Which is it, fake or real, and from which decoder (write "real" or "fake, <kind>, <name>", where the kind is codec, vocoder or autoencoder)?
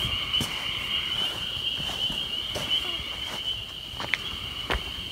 real